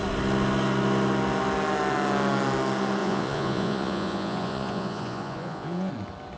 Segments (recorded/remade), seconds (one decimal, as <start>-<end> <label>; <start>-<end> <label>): 0.0-3.0 recorded; 3.0-5.9 remade; 5.9-6.4 recorded